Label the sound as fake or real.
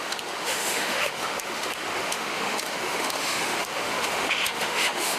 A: fake